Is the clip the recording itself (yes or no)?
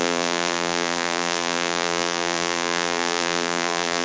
no